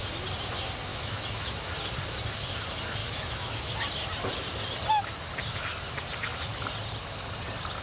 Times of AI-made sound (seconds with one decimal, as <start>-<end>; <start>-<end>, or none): 0.9-1.5; 3.0-3.7